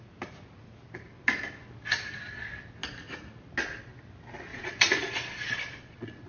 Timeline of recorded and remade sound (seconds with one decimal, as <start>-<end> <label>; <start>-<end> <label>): 0.0-4.5 recorded; 4.5-6.3 remade